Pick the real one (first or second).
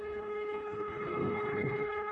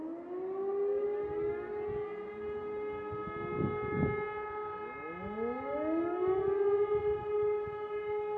second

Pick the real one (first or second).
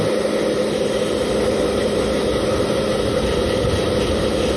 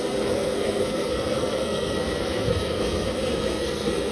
first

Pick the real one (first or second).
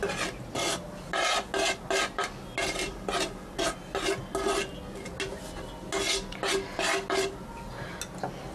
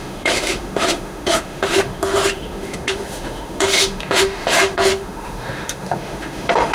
first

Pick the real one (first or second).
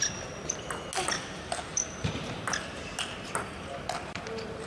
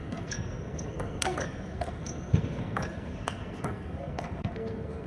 first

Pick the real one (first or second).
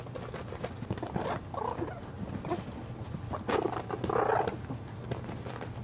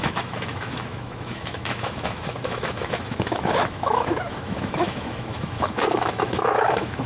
first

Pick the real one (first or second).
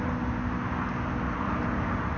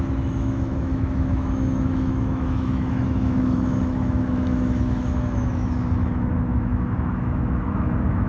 first